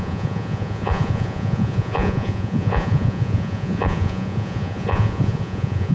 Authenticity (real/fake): fake